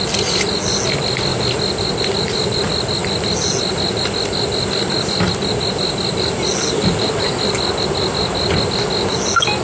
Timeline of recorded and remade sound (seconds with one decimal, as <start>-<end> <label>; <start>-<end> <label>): 0.0-9.6 recorded